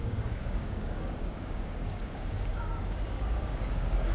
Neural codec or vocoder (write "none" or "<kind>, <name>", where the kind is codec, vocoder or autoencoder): codec, DAC